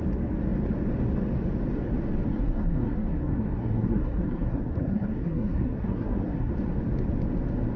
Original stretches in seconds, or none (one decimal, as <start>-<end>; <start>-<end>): 0.0-2.3; 6.5-7.8